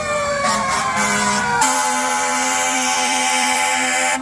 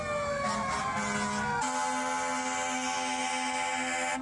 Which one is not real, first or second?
first